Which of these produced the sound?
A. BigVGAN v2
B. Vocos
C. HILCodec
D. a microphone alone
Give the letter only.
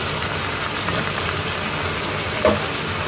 D